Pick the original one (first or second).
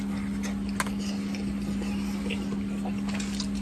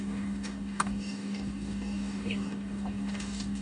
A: first